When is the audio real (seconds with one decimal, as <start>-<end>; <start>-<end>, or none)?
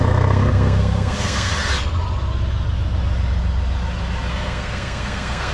1.5-4.3